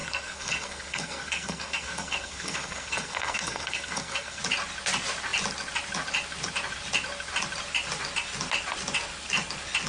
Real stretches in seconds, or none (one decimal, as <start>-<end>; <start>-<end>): 4.4-9.9